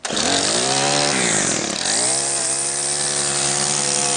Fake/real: real